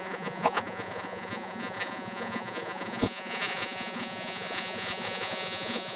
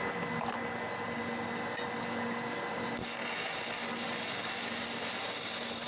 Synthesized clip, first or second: first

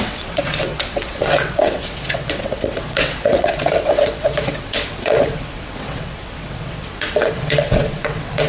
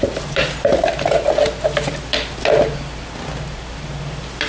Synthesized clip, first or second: first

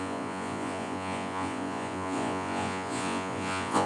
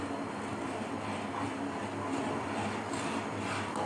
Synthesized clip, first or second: first